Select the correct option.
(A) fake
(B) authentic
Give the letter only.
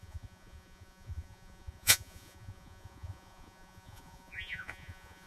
A